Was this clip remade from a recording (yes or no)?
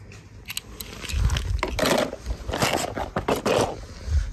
no